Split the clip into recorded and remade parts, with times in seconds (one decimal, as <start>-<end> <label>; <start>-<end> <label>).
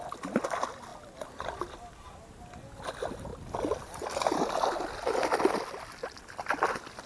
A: 0.0-7.1 recorded